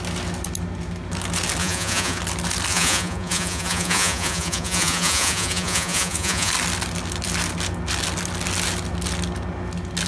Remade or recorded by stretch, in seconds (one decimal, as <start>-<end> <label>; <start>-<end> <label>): 0.0-1.6 recorded; 1.6-2.2 remade; 2.2-2.7 recorded; 2.7-6.5 remade; 6.5-10.1 recorded